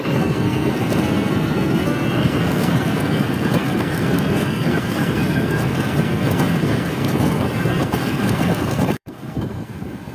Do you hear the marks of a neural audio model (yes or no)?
yes